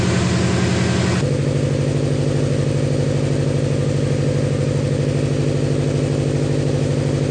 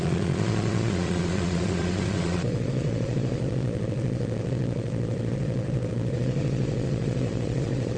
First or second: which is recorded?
first